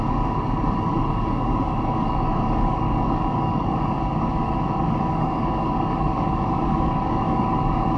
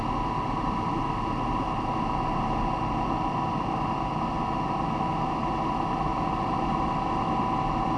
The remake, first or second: first